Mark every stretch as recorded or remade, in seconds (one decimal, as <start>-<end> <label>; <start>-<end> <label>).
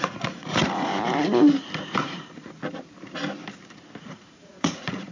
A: 0.0-0.9 remade; 0.9-2.0 recorded; 2.0-2.6 remade; 2.6-4.0 recorded; 4.0-5.1 remade